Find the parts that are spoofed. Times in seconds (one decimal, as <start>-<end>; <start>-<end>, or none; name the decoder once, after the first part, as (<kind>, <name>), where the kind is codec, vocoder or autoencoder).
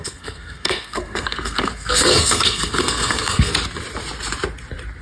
0.0-3.5 (codec, SNAC)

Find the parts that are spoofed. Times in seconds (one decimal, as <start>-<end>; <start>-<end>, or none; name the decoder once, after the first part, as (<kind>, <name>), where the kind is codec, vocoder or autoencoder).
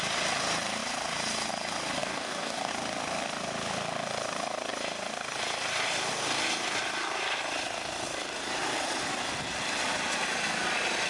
2.0-2.7 (codec, DAC)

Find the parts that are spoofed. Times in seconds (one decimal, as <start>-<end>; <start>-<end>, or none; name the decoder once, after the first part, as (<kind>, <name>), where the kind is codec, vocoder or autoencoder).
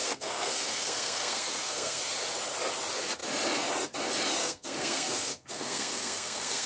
0.0-2.0 (codec, SNAC); 4.4-6.7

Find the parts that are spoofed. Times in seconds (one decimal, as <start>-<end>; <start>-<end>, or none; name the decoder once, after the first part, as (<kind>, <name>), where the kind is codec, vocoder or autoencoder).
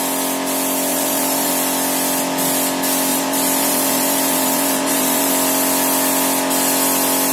0.9-1.5 (vocoder, BigVGAN v2); 3.1-5.3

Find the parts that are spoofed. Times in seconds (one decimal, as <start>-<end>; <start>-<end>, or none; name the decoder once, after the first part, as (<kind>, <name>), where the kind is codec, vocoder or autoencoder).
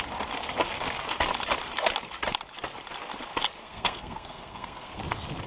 3.6-5.0 (codec, SNAC)